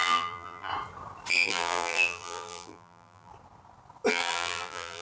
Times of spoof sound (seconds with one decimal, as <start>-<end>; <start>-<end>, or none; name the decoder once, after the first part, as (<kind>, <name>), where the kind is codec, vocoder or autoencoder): 0.0-0.7 (vocoder, BigVGAN v2); 1.3-3.3; 4.1-5.0